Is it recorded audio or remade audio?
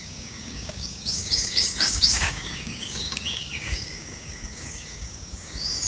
remade